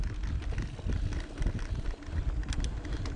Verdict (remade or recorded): recorded